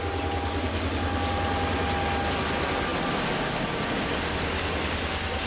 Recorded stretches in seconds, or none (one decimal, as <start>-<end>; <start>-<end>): 0.0-5.5